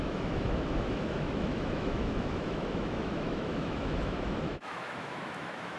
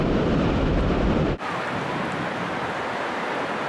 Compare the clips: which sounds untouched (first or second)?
second